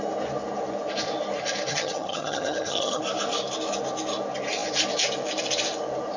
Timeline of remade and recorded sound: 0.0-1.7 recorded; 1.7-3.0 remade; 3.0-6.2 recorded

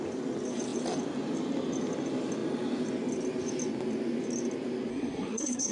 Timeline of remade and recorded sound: 0.0-4.9 recorded; 4.9-5.7 remade

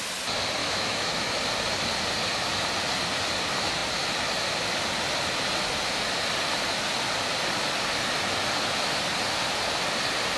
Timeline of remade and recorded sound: 0.0-0.6 recorded; 0.6-1.3 remade; 1.3-10.4 recorded

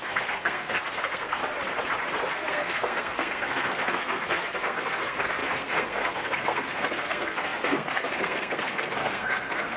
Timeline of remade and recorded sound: 0.0-1.4 remade; 1.4-2.3 recorded; 2.3-9.8 remade

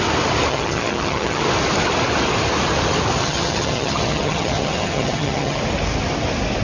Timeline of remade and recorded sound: 0.0-0.5 recorded; 0.5-1.4 remade; 1.4-3.2 recorded; 3.2-5.6 remade; 5.6-6.6 recorded